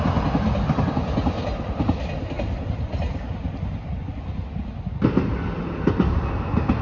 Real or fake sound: real